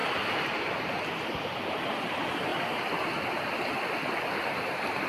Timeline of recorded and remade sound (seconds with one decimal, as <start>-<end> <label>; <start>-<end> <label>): 0.0-5.1 recorded